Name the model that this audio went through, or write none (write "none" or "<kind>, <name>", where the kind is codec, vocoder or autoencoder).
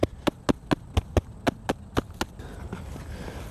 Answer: none